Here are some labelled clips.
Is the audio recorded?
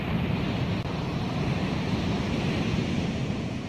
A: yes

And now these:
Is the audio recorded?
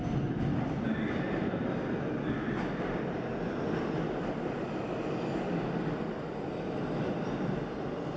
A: yes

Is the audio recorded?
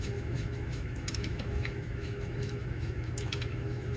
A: no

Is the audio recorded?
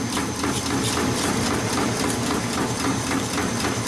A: no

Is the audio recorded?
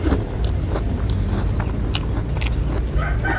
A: yes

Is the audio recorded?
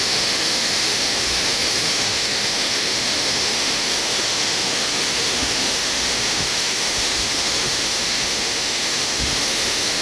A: no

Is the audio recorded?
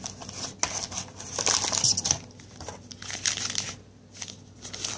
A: yes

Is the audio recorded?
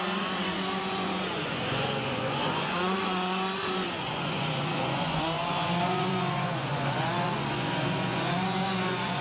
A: no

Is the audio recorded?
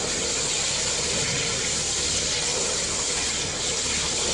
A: yes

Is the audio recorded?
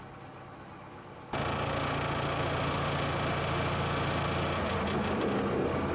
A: yes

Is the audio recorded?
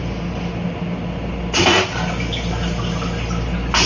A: yes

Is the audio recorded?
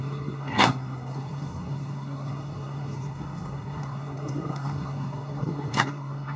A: no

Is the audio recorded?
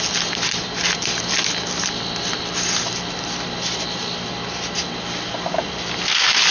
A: yes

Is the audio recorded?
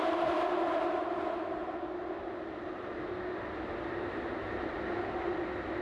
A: yes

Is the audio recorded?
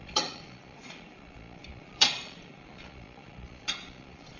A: no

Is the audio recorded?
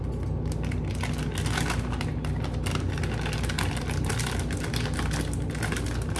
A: yes